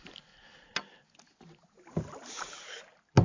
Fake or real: real